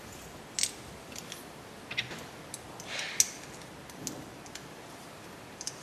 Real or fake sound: real